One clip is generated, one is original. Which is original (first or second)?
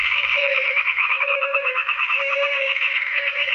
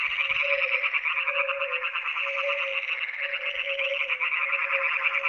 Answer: second